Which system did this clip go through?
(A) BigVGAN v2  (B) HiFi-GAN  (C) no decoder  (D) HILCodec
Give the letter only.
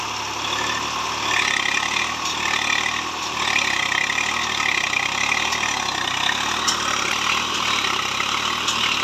C